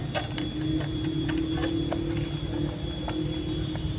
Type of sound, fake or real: real